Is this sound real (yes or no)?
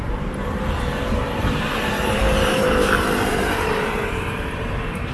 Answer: no